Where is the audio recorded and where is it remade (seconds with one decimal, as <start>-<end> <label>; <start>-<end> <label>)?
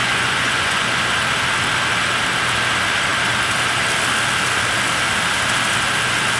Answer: 0.0-1.0 remade; 1.0-6.4 recorded